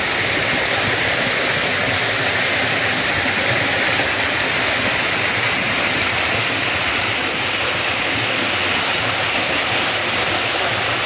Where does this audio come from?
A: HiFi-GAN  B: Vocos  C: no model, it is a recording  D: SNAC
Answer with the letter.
C